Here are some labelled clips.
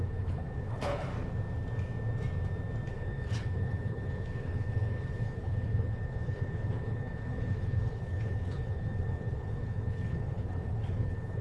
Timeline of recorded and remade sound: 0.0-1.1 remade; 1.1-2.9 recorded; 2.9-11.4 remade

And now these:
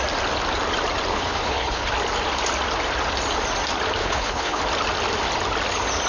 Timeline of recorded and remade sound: 0.0-1.1 recorded; 1.1-1.9 remade; 1.9-4.0 recorded; 4.0-4.6 remade; 4.6-6.1 recorded

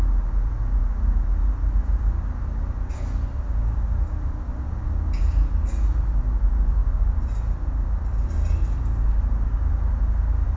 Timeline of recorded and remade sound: 0.0-10.6 recorded

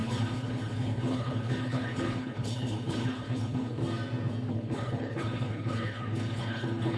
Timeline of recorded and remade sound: 0.0-3.8 remade; 3.8-4.5 recorded; 4.5-7.0 remade

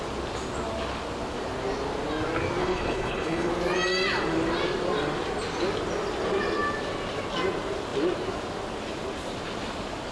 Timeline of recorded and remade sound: 0.0-2.6 recorded; 2.6-3.5 remade; 3.5-10.1 recorded

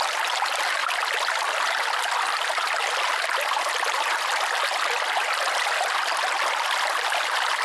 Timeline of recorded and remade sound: 0.0-7.6 recorded

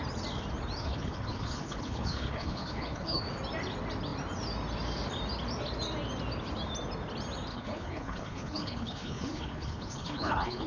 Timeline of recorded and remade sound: 0.0-0.8 recorded; 0.8-3.2 remade; 3.2-7.5 recorded; 7.5-10.7 remade